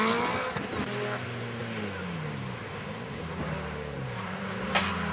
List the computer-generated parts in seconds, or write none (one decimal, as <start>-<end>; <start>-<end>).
1.6-4.4